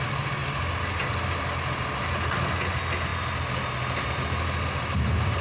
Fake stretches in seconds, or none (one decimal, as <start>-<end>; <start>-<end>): none